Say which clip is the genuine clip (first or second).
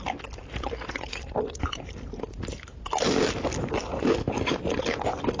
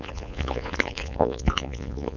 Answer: first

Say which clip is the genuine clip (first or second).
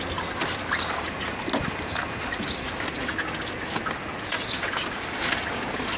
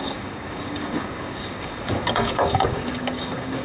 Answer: first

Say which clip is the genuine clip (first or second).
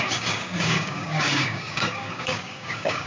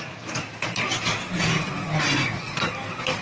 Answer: second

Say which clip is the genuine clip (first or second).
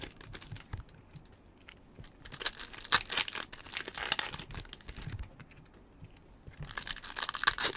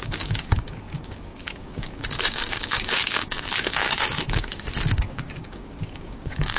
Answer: first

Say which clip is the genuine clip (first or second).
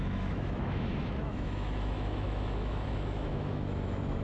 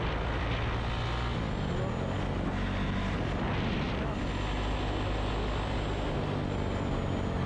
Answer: second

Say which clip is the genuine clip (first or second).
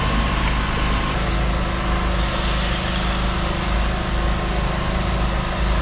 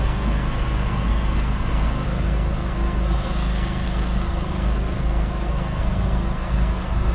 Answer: first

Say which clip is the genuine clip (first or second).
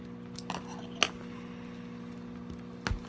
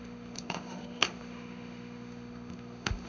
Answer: first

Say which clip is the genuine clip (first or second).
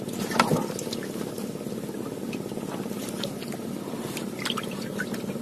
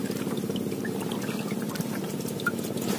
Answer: second